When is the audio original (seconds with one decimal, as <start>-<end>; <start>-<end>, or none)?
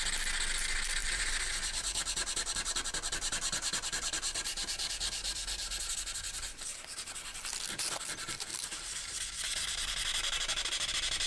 0.0-1.0; 4.9-8.5; 10.9-11.3